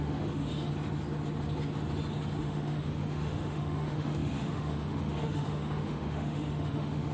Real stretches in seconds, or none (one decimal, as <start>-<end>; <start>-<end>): 0.7-2.4